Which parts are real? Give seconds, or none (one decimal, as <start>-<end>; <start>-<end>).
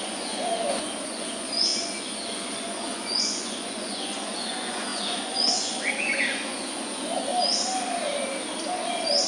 7.3-9.3